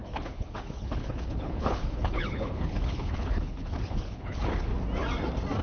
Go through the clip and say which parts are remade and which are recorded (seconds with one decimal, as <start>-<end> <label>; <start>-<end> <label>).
0.0-4.7 remade; 4.7-5.6 recorded